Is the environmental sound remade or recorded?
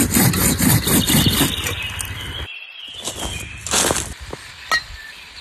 recorded